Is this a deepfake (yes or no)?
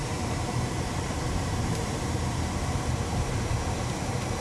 yes